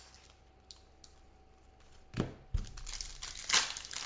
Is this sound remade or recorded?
recorded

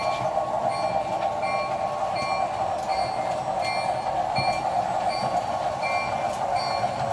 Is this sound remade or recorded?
recorded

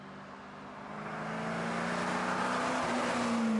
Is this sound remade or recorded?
recorded